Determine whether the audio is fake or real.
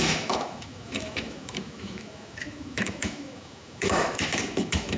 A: fake